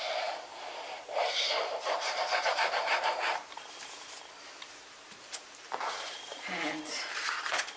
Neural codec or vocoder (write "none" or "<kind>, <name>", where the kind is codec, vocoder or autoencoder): vocoder, BigVGAN v2